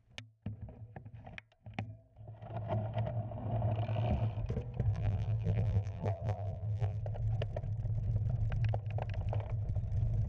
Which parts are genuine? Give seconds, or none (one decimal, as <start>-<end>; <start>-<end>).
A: 0.0-4.9; 7.0-10.3